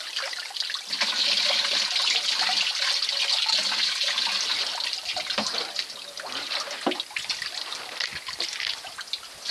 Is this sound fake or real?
real